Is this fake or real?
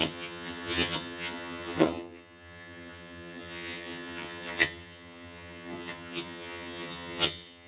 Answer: fake